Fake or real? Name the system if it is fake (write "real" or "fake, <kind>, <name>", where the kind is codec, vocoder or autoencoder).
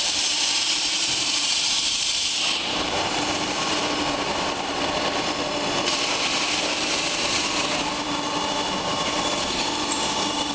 fake, vocoder, BigVGAN v2